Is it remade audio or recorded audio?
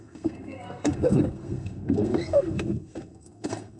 remade